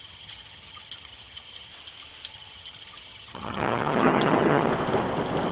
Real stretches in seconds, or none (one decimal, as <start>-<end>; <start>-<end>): 1.7-2.3; 4.7-5.5